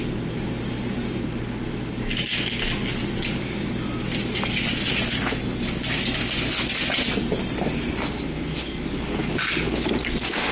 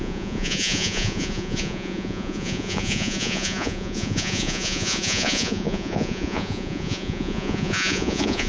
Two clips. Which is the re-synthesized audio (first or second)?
second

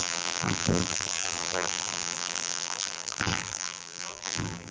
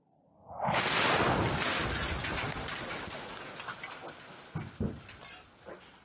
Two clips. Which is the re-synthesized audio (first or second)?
first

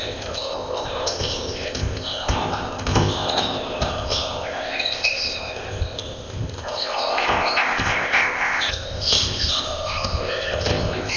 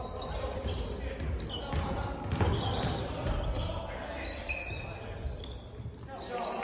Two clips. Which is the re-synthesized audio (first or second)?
first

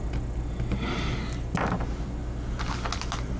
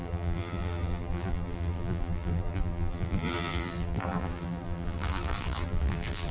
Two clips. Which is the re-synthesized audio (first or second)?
second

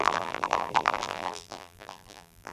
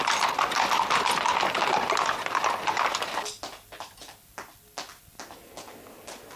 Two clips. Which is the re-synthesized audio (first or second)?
first